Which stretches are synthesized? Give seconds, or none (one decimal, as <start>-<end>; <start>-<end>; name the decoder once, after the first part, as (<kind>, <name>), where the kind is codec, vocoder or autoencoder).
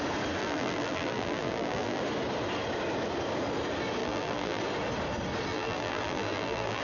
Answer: 0.4-2.0 (vocoder, BigVGAN v2); 4.0-4.6; 5.5-6.8